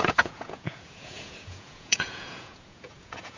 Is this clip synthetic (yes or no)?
yes